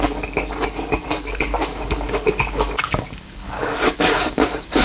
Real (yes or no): no